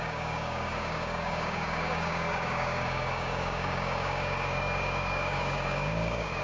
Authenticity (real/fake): fake